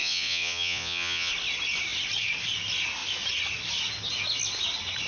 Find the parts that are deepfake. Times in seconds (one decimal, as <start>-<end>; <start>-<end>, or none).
0.0-1.3